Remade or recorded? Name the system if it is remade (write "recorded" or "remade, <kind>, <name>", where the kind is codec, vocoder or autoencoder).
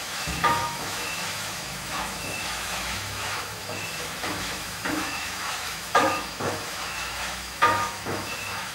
remade, autoencoder, DAC-VAE